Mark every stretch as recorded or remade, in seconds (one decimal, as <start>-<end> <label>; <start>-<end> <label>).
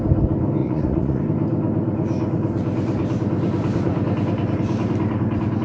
0.0-0.6 recorded; 0.6-1.2 remade; 1.2-5.6 recorded